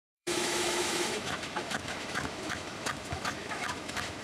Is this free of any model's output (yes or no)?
no